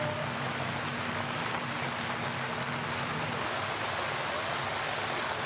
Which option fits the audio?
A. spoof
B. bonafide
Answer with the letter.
B